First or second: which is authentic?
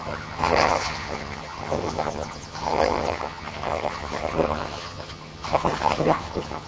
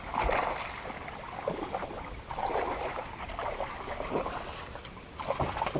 second